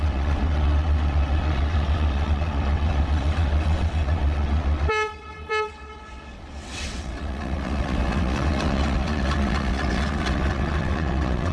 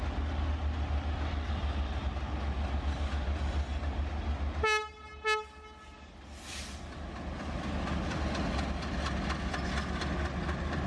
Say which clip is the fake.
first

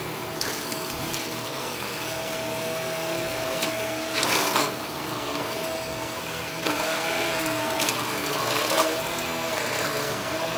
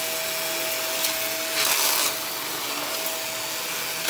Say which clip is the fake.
first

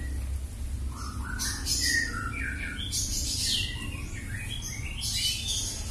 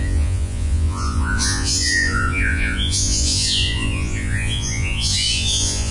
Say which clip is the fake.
second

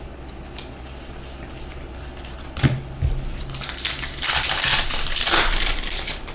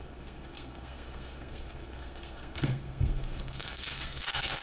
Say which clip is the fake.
second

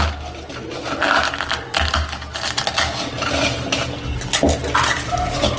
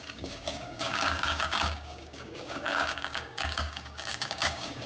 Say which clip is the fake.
second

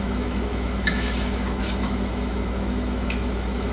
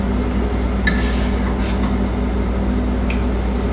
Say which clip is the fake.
first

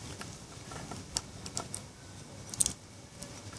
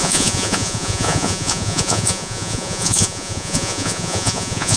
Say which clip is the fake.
second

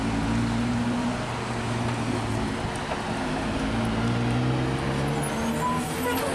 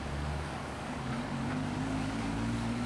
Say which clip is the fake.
second